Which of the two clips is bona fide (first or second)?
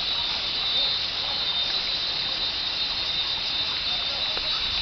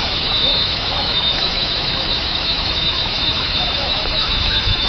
first